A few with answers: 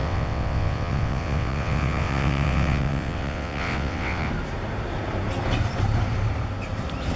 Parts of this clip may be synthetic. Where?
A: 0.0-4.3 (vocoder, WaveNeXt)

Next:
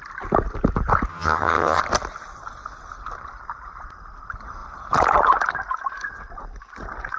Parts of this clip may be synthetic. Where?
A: 1.1-1.8 (vocoder, HiFi-GAN)

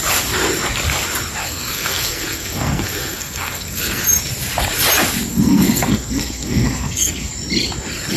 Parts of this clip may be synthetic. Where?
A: 1.4-4.0 (codec, SNAC); 5.3-7.3

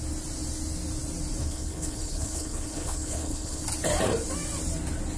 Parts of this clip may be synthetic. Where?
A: 1.4-3.6 (codec, HILCodec)

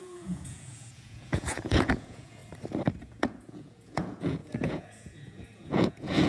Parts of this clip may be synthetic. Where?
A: 0.0-2.4 (vocoder, Vocos); 3.0-6.3

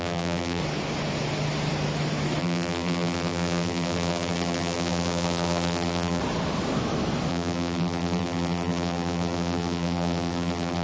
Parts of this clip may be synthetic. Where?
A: 0.0-0.6 (vocoder, BigVGAN v2); 2.4-6.2; 7.3-10.8